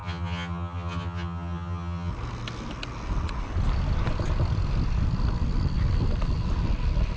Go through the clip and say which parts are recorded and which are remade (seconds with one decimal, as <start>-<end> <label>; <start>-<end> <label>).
0.0-2.1 remade; 2.1-7.2 recorded